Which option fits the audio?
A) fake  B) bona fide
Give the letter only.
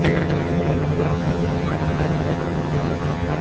A